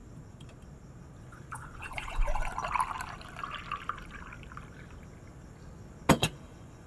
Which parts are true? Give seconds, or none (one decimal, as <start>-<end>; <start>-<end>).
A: 0.0-1.2; 2.5-6.1